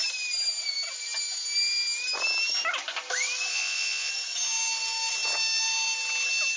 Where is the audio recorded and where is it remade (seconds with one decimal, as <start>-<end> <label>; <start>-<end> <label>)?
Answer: 0.0-3.5 recorded; 3.5-4.1 remade; 4.1-6.6 recorded